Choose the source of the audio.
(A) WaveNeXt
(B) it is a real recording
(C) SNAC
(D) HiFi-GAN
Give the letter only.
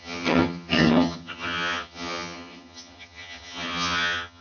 D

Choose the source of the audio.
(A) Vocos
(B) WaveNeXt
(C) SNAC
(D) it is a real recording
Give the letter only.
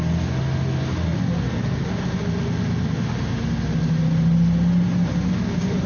D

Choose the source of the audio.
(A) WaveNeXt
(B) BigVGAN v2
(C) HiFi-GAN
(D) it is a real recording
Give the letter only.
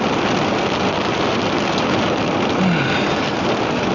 D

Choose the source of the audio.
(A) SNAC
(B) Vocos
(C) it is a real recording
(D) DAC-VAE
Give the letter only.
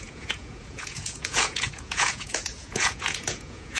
B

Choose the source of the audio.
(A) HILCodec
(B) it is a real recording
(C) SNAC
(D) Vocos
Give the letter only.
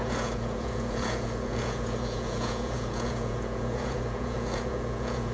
D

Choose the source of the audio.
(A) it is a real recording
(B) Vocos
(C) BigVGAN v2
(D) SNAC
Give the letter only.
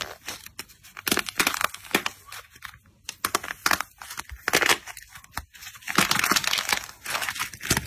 A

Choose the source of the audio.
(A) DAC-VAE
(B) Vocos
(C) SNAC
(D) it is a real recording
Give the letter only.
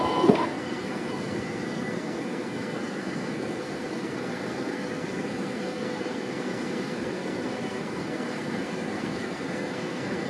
C